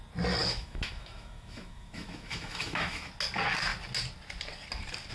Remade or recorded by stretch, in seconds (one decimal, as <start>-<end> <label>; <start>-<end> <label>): 0.0-0.4 recorded; 0.4-3.1 remade; 3.1-5.1 recorded